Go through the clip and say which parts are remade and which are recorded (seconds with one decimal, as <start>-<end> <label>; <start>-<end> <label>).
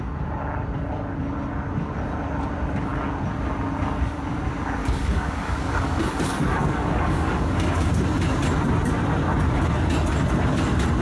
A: 0.0-4.8 recorded; 4.8-7.9 remade; 7.9-11.0 recorded